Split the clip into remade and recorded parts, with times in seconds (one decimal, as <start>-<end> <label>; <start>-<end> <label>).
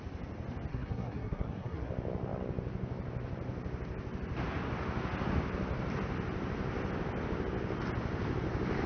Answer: 0.0-0.7 recorded; 0.7-1.9 remade; 1.9-8.9 recorded